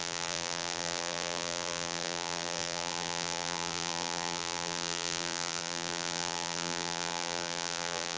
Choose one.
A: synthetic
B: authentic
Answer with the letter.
A